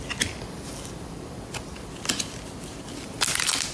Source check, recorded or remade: recorded